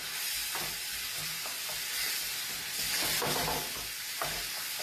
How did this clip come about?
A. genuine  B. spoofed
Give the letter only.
B